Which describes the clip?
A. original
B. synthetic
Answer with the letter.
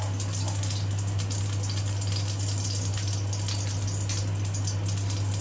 A